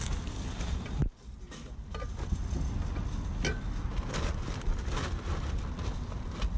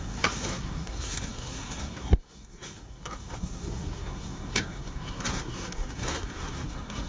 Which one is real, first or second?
first